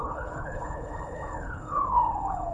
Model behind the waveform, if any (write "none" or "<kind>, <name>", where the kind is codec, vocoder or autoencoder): codec, HILCodec